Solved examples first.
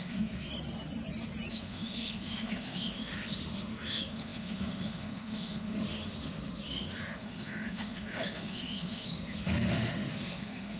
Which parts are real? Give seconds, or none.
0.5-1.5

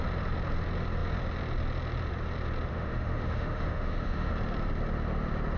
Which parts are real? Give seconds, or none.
0.0-2.7; 4.3-5.6

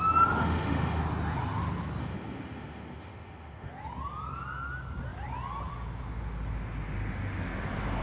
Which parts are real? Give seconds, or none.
0.0-0.4; 1.0-2.0; 3.7-8.0

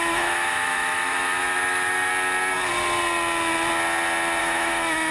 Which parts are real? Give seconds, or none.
2.1-4.4